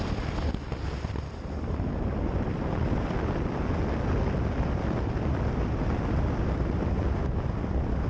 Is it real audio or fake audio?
real